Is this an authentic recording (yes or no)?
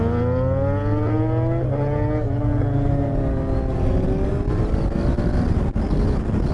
yes